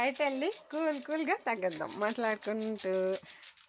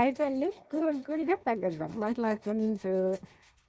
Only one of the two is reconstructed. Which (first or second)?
second